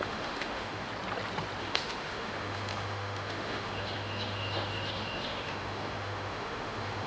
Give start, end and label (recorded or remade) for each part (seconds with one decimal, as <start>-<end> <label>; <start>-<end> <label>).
0.0-0.9 remade; 0.9-1.6 recorded; 1.6-7.1 remade